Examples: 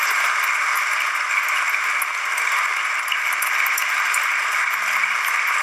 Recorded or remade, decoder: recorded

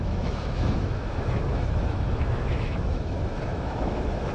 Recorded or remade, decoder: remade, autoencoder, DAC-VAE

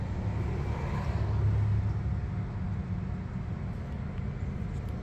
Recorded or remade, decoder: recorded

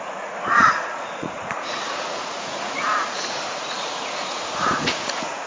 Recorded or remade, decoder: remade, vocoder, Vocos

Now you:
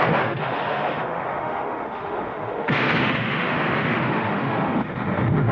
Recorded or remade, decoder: remade, autoencoder, DAC-VAE